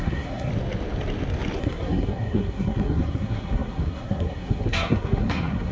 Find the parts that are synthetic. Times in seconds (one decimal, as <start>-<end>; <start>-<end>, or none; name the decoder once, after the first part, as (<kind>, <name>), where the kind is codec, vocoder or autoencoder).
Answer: 0.0-0.5 (codec, SNAC); 1.6-5.7